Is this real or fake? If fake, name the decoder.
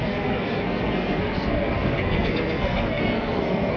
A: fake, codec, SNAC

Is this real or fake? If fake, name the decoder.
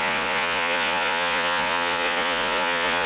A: fake, vocoder, Vocos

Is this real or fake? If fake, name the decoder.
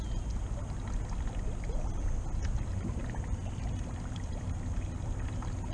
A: real